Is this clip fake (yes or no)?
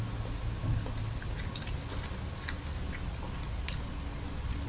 no